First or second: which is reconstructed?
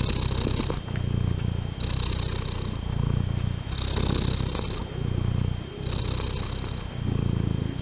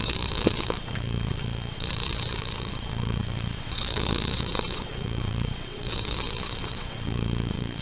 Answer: second